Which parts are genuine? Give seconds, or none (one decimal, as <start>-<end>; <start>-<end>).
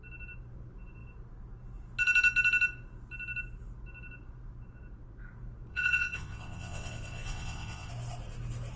0.0-5.7; 7.9-8.8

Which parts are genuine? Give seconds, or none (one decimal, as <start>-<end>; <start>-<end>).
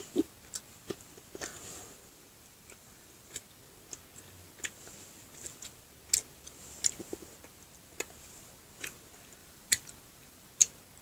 0.0-1.5; 3.5-9.4; 10.5-11.0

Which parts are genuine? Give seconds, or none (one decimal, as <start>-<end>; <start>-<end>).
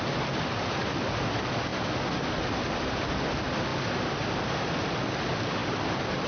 0.0-6.3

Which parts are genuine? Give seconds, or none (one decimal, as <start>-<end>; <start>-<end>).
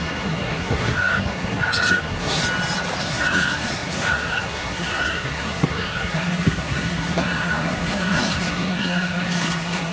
2.4-3.0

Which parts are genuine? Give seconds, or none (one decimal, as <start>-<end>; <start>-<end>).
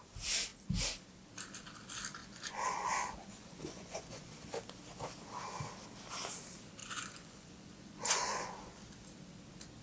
0.0-2.2; 4.3-6.8; 8.8-9.8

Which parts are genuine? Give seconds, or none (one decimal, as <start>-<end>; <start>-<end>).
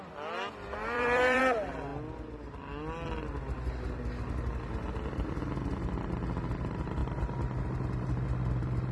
0.0-0.8; 1.4-8.9